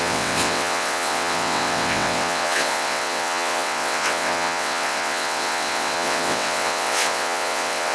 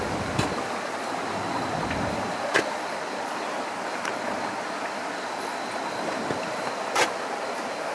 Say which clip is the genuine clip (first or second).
second